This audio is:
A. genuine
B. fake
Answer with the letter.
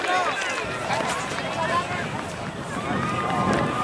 A